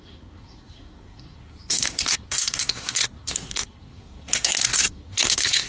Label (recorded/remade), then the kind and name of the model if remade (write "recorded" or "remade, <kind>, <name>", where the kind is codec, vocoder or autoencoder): remade, codec, SNAC